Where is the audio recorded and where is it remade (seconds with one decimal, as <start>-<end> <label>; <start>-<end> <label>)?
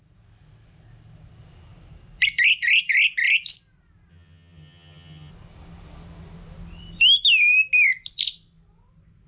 0.0-4.1 recorded; 4.1-5.3 remade; 5.3-9.3 recorded